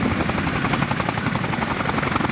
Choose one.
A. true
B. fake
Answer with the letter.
A